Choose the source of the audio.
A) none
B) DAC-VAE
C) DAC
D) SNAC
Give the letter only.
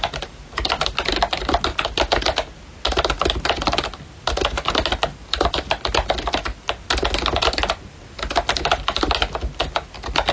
A